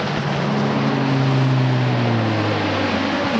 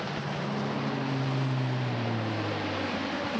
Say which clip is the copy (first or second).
second